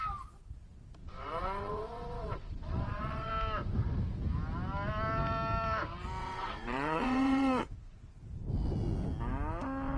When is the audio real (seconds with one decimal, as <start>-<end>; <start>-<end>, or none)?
0.0-1.0; 3.3-6.2; 8.1-10.0